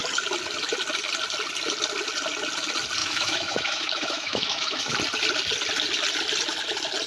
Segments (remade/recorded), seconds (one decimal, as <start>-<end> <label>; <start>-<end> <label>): 0.0-3.0 recorded; 3.0-4.8 remade; 4.8-7.1 recorded